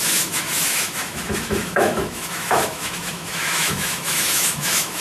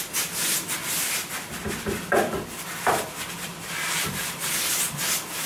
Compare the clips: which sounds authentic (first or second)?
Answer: second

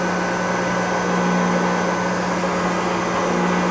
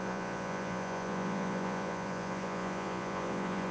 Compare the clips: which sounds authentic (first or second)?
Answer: first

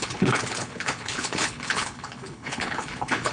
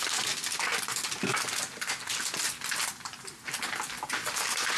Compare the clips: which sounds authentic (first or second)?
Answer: second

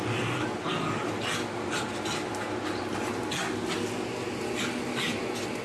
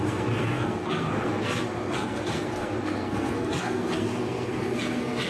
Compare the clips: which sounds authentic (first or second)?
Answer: first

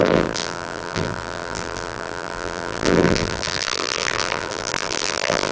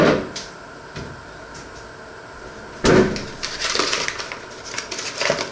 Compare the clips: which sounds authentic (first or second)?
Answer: second